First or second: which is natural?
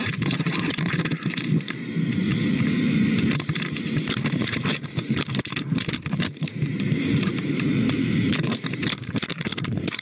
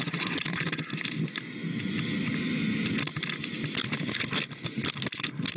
second